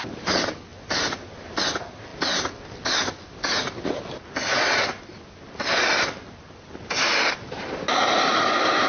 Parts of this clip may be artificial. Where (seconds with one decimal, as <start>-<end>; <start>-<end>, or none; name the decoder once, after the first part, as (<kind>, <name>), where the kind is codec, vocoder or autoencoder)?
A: none

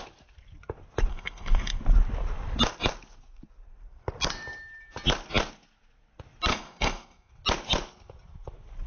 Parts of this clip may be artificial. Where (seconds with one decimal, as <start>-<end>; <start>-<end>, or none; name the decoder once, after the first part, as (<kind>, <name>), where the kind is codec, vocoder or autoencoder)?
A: 1.1-1.8 (codec, SNAC); 6.5-7.3

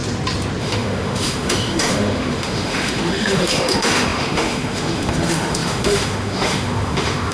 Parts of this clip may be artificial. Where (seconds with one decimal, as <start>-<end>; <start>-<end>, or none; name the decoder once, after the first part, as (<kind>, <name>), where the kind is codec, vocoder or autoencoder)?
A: 0.6-7.3 (autoencoder, DAC-VAE)

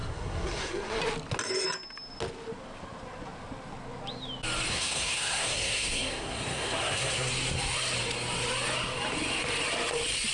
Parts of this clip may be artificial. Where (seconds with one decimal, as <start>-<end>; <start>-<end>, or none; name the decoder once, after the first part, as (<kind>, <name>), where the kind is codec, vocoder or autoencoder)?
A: 0.0-1.0 (codec, SNAC); 4.7-7.3

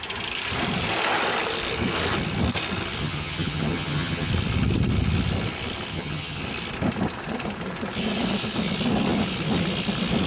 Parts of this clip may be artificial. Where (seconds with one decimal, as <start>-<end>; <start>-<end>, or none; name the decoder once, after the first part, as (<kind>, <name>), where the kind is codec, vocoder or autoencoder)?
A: 3.0-4.3 (vocoder, HiFi-GAN); 5.9-6.4